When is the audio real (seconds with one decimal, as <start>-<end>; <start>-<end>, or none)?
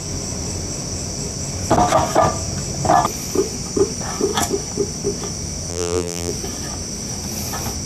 0.0-5.7; 6.3-7.9